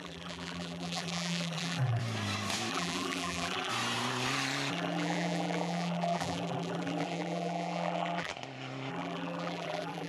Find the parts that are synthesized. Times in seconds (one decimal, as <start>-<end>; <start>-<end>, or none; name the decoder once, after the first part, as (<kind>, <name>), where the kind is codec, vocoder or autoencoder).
0.0-2.0 (vocoder, BigVGAN v2); 2.7-3.7; 4.7-8.3; 8.9-10.1